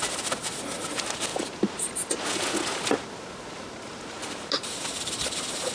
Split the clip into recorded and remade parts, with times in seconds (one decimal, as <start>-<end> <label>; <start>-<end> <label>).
0.0-5.7 recorded